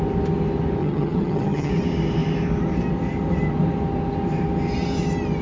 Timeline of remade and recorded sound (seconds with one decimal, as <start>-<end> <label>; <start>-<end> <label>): 0.0-0.8 recorded; 0.8-1.7 remade; 1.7-5.4 recorded